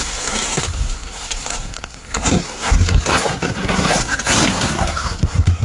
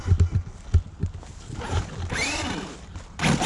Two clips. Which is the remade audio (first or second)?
first